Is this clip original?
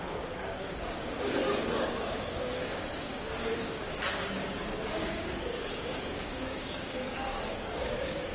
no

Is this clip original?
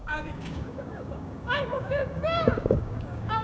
no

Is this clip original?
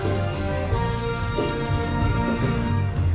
no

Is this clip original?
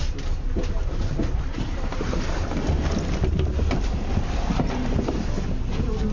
yes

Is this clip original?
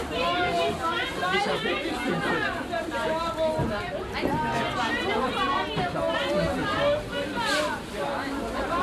yes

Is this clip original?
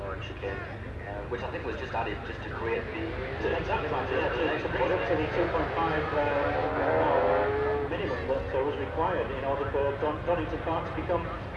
yes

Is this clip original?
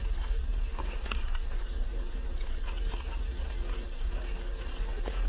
no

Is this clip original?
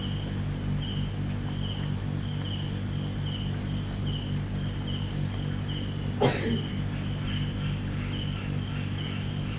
yes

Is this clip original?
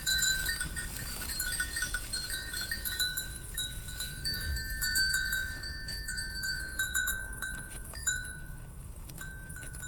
no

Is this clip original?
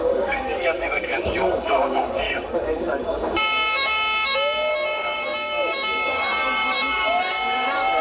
no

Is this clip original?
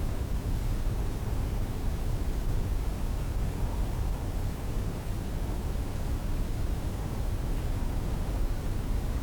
no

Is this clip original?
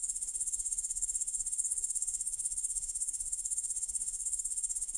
no